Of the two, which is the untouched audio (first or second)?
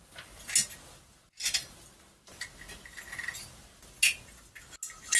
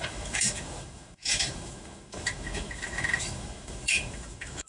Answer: first